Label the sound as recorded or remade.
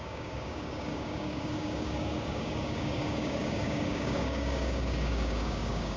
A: remade